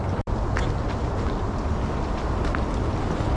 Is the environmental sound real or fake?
real